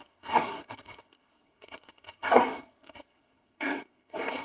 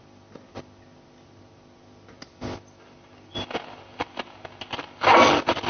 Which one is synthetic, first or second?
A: first